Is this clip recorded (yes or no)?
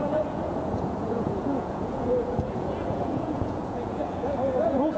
no